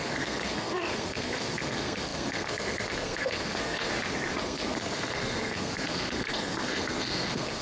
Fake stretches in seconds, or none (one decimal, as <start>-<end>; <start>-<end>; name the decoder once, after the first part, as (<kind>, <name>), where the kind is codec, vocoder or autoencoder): 0.0-3.9 (codec, SNAC); 4.4-7.6